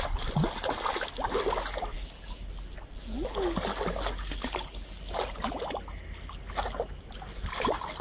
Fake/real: real